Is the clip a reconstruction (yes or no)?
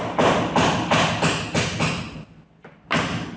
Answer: no